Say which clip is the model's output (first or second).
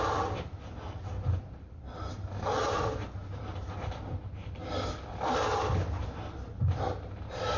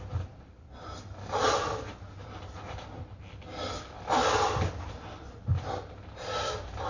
first